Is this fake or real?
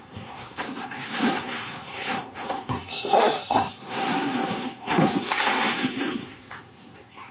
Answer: fake